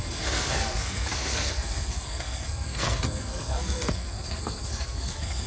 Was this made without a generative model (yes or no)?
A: no